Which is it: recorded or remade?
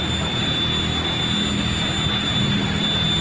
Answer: recorded